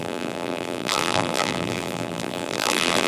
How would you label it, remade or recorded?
remade